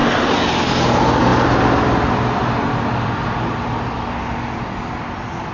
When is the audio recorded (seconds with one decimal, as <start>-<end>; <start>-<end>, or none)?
0.0-5.5